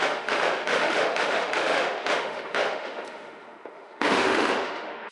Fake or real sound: fake